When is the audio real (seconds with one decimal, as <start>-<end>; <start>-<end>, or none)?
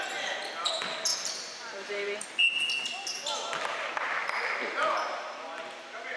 0.0-1.1; 2.6-4.2; 5.0-6.2